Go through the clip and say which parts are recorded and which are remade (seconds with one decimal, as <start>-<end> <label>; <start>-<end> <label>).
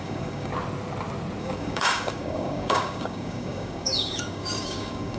0.0-0.5 remade; 0.5-1.4 recorded; 1.4-5.2 remade